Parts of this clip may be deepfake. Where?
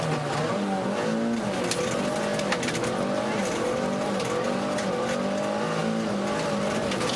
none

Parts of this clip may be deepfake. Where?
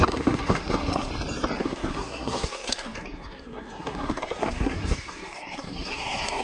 0.0-1.1 (codec, SNAC); 1.6-6.4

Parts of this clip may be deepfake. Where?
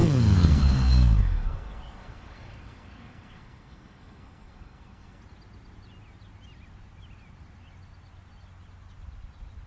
0.0-5.2 (codec, SNAC)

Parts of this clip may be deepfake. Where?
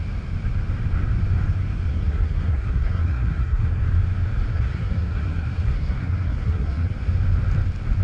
1.9-3.9 (codec, SNAC); 4.5-7.0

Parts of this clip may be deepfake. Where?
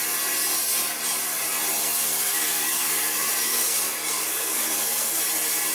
1.8-5.2 (codec, SNAC)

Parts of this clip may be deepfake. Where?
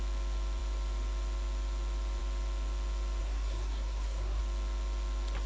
3.2-4.4 (codec, SNAC)